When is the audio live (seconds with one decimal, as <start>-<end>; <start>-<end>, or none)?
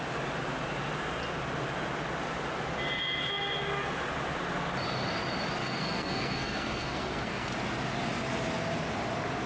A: 0.0-5.6; 7.5-9.5